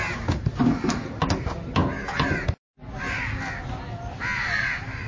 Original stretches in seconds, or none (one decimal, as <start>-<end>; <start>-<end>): 0.0-5.1